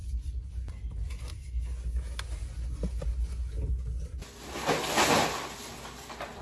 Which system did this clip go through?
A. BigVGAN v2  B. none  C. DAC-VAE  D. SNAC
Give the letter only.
B